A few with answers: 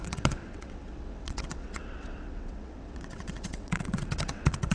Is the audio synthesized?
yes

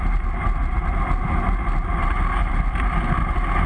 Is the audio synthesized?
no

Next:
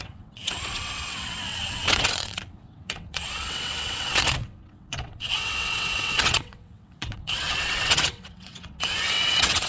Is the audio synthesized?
yes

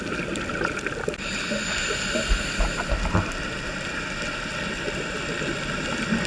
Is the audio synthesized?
no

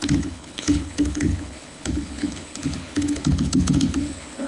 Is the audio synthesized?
yes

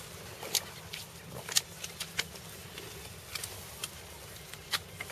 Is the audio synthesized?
no